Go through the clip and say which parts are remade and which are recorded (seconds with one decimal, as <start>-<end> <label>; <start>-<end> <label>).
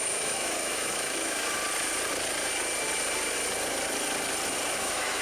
0.0-1.6 remade; 1.6-4.7 recorded; 4.7-5.2 remade